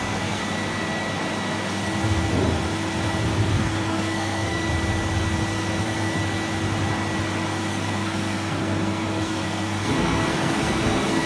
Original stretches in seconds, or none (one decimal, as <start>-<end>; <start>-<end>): 0.4-3.5; 4.7-5.8; 6.2-7.7